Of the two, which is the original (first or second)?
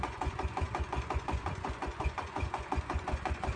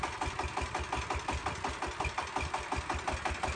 second